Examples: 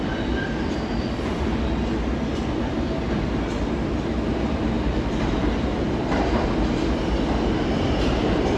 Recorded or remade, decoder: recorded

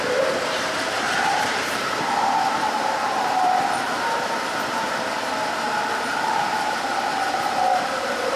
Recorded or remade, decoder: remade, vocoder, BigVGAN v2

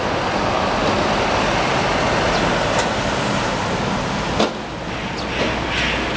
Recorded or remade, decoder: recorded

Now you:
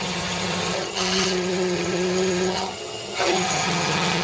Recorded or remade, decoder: remade, vocoder, HiFi-GAN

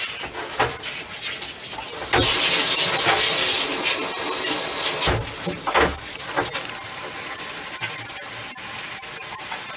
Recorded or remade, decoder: recorded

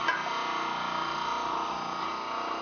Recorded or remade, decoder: recorded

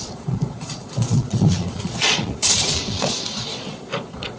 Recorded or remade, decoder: remade, vocoder, Vocos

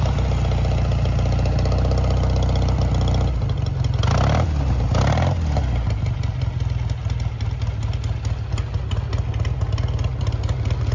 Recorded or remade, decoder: recorded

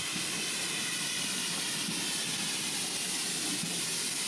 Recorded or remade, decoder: recorded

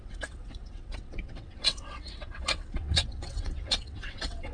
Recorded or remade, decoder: remade, vocoder, WaveNeXt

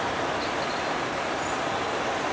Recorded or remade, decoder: recorded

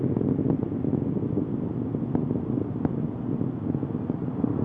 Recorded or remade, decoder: recorded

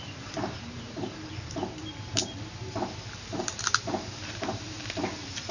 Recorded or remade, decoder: remade, vocoder, BigVGAN v2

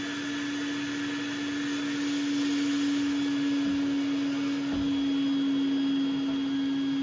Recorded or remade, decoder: recorded